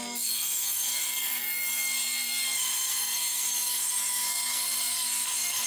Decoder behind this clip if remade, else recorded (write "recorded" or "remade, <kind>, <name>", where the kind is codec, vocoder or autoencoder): remade, codec, SNAC